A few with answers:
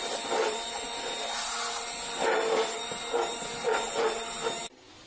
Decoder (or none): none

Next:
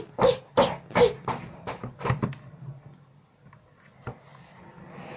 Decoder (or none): none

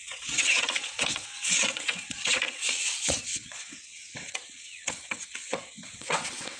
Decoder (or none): vocoder, WaveNeXt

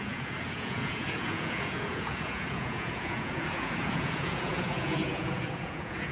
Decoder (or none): vocoder, Vocos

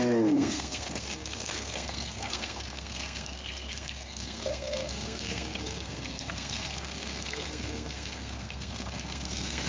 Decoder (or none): codec, SNAC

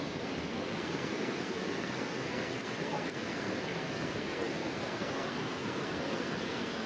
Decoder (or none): codec, SNAC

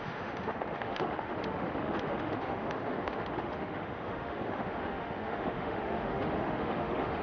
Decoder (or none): autoencoder, DAC-VAE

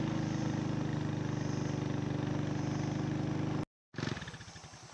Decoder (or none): none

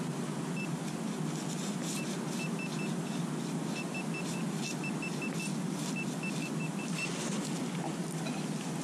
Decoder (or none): none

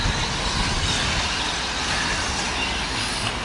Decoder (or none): none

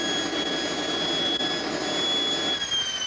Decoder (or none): none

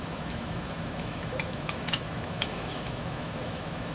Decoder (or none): autoencoder, DAC-VAE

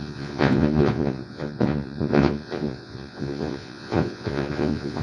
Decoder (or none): vocoder, Vocos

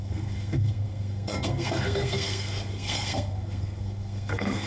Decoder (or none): codec, SNAC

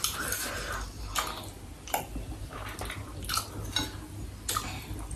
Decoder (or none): none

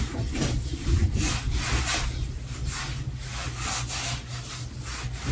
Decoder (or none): none